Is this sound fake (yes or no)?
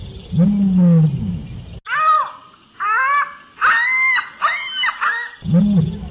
no